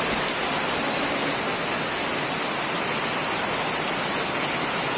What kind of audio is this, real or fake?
real